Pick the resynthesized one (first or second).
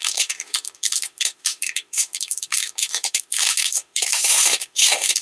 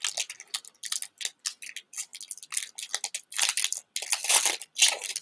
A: first